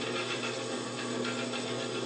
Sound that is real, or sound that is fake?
real